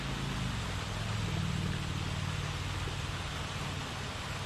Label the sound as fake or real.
real